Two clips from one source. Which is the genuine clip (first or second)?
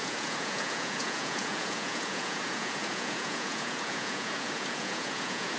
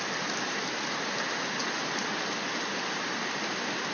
second